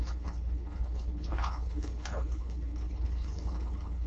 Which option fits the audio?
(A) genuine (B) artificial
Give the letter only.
B